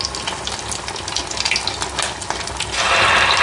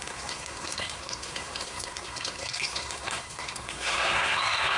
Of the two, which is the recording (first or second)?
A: first